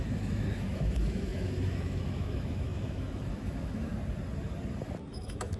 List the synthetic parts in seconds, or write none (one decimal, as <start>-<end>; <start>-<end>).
0.0-3.9; 5.1-5.6